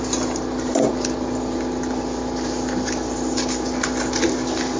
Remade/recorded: recorded